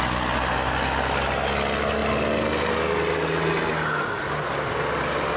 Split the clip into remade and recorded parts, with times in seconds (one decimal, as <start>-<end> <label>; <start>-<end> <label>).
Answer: 0.0-5.4 recorded